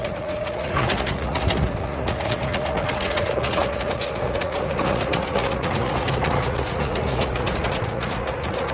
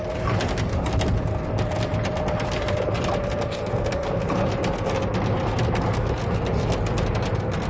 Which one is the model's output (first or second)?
first